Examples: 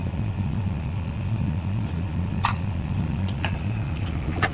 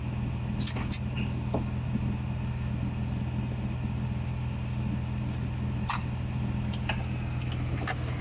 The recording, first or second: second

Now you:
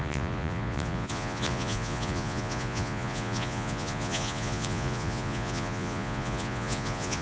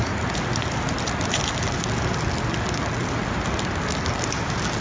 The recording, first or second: second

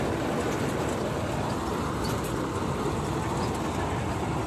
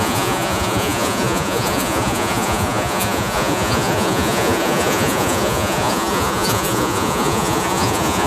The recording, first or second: first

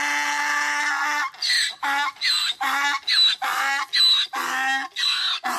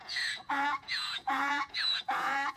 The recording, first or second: first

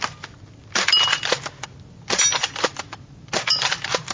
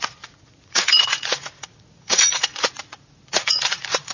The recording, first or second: first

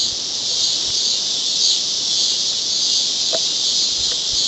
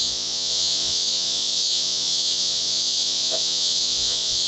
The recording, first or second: first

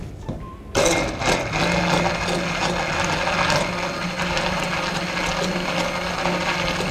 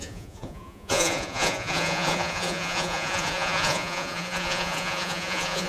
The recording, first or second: first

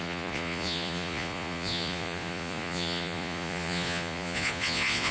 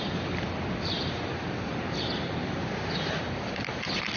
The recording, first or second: second